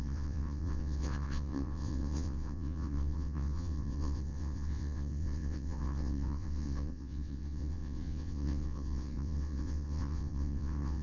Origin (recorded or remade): remade